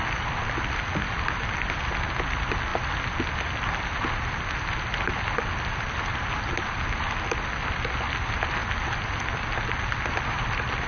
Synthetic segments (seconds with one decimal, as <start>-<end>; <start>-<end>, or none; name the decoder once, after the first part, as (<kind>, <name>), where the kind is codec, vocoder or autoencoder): none